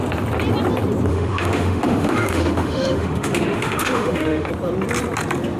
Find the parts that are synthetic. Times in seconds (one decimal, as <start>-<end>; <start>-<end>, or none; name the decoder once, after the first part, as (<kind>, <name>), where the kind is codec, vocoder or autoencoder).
1.1-4.5 (autoencoder, DAC-VAE)